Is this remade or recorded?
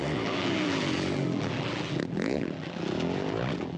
remade